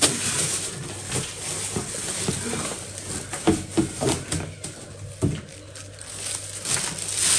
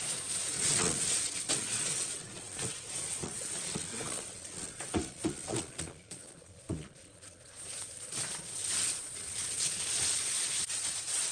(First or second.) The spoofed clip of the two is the second